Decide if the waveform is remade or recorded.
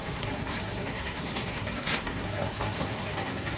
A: remade